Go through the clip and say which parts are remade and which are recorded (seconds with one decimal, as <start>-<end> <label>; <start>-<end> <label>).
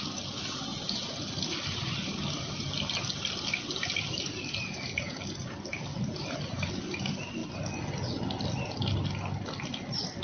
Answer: 0.0-5.9 recorded; 5.9-6.7 remade; 6.7-10.2 recorded